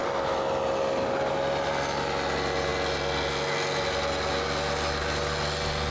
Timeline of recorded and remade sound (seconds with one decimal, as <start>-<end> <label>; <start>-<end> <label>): 0.0-5.9 recorded